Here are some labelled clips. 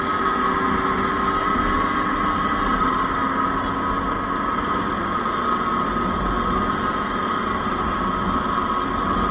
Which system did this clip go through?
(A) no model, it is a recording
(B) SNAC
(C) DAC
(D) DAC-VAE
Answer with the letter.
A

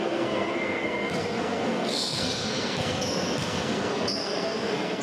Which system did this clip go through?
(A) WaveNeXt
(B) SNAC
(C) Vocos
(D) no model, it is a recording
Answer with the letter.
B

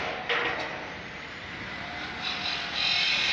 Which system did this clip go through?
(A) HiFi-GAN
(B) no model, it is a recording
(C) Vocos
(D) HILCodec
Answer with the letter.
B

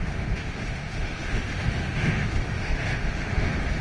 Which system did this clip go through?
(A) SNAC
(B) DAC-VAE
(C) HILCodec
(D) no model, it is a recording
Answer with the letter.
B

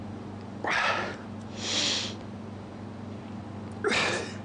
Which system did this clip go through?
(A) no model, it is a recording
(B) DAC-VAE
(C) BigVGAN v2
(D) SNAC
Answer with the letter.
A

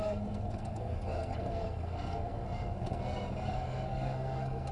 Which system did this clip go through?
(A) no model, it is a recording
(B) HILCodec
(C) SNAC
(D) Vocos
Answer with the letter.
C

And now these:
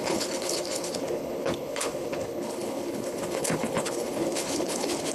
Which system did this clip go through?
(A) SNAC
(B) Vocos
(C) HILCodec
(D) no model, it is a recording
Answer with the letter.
C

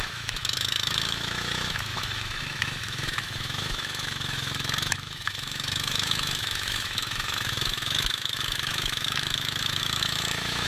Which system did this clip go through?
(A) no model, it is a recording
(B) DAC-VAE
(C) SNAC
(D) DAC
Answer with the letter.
B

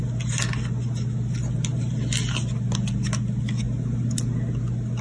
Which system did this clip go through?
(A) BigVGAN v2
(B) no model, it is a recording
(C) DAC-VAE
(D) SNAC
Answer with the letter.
B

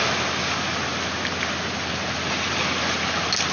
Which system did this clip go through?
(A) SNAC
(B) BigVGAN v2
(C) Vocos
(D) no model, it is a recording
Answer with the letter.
D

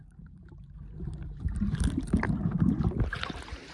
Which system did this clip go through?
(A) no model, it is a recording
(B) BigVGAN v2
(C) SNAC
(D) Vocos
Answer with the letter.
B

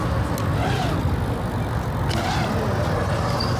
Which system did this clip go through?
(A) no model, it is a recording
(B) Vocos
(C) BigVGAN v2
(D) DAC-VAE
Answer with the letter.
A